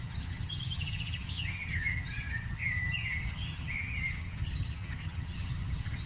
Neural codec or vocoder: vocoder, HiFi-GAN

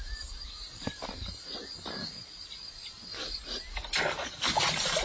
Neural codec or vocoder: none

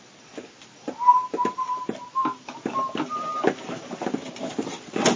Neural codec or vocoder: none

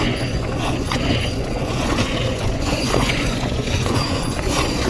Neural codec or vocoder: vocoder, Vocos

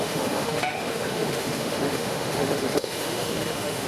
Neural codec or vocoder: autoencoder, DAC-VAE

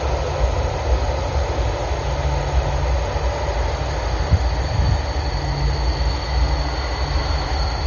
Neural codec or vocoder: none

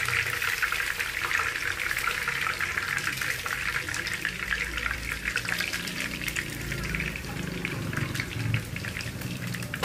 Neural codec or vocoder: vocoder, BigVGAN v2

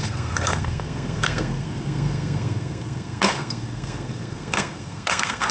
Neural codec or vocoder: codec, SNAC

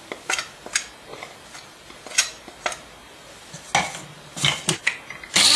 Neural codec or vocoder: none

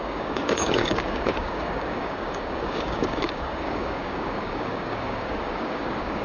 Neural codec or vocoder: codec, DAC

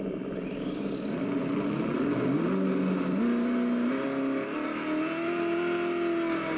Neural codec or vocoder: none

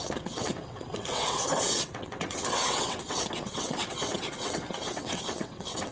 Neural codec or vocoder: vocoder, WaveNeXt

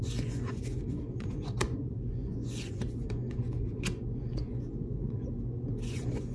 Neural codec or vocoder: vocoder, Vocos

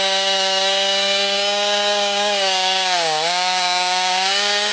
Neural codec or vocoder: codec, DAC